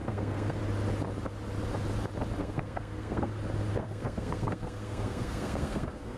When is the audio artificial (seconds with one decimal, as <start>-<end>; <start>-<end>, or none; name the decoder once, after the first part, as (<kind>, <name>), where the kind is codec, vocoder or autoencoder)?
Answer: 0.0-0.6 (codec, SNAC); 2.4-3.3; 3.7-6.2